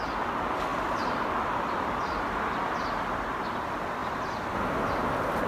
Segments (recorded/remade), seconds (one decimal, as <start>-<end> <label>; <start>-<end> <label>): 0.0-0.7 recorded; 0.7-2.3 remade; 2.3-5.5 recorded